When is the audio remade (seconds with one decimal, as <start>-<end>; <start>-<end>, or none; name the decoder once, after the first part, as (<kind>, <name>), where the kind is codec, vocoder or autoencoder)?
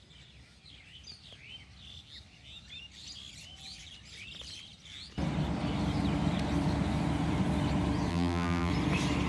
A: 8.1-8.7 (vocoder, BigVGAN v2)